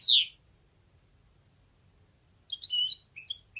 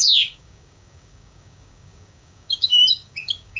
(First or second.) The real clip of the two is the first